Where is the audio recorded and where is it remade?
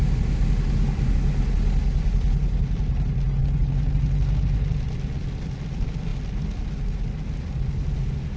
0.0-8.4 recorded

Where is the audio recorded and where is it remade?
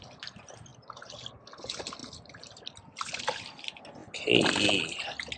0.0-5.4 recorded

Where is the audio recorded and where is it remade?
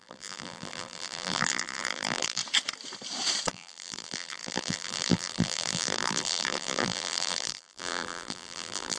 0.0-2.4 remade; 2.4-3.5 recorded; 3.5-9.0 remade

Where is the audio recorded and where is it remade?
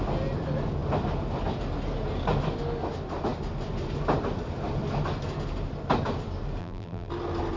0.0-6.6 recorded; 6.6-7.1 remade; 7.1-7.6 recorded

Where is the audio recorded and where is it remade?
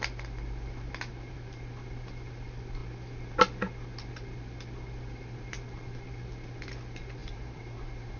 0.0-7.2 recorded; 7.2-8.2 remade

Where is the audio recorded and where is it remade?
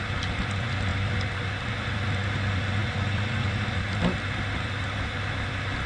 0.0-0.9 recorded; 0.9-1.7 remade; 1.7-2.8 recorded; 2.8-4.6 remade; 4.6-5.9 recorded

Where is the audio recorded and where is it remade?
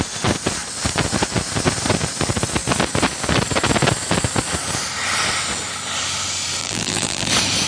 0.0-6.6 recorded; 6.6-7.3 remade; 7.3-7.7 recorded